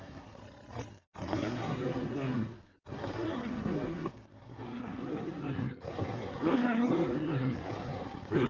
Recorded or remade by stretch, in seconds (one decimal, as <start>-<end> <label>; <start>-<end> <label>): 0.0-0.4 remade; 0.4-0.9 recorded; 0.9-8.5 remade